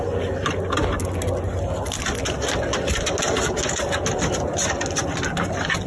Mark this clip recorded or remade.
recorded